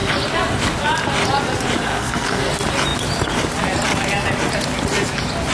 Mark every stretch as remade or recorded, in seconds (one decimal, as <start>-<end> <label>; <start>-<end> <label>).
0.0-1.9 recorded; 1.9-2.5 remade; 2.5-5.5 recorded